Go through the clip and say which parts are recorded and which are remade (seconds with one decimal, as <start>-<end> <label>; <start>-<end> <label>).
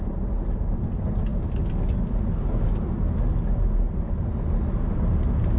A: 0.0-5.6 recorded